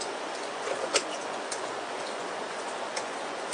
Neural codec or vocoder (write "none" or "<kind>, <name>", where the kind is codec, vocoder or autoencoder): vocoder, Vocos